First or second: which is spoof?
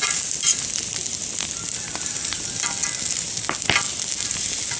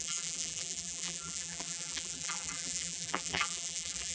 second